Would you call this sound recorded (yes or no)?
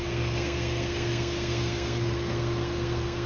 no